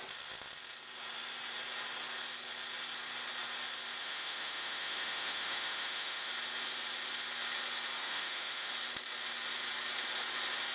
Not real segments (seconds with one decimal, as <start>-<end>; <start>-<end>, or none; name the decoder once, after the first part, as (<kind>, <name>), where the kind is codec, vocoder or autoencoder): 4.0-6.3 (autoencoder, DAC-VAE); 8.0-8.7